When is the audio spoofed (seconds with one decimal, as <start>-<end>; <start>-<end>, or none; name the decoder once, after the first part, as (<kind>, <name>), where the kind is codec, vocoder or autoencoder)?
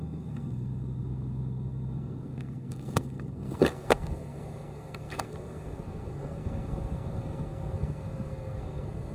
0.0-9.1 (codec, SNAC)